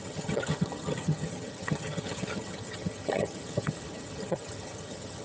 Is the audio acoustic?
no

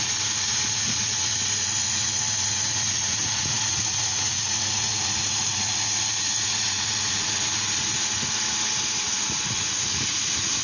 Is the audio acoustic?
no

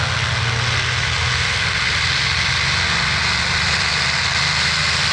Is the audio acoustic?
yes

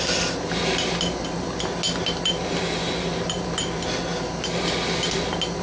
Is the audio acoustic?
yes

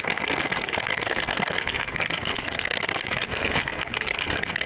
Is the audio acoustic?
no